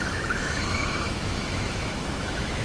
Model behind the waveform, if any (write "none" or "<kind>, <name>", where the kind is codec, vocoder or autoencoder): autoencoder, DAC-VAE